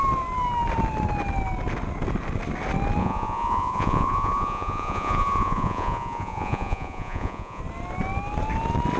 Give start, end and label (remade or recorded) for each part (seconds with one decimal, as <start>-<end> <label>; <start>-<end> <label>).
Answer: 0.0-3.0 recorded; 3.0-7.6 remade; 7.6-9.0 recorded